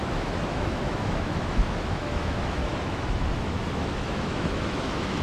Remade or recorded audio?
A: remade